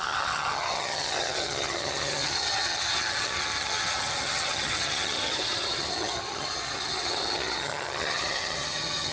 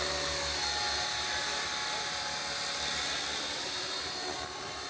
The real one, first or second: second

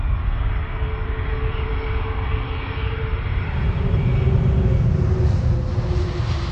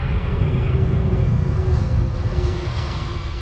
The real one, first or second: first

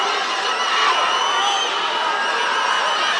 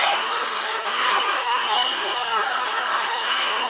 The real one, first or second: first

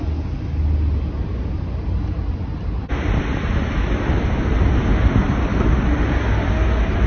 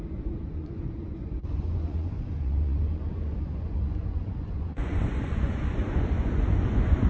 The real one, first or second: first